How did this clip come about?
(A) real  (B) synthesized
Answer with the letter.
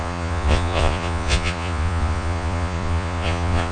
B